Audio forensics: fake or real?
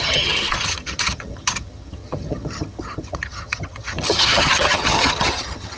fake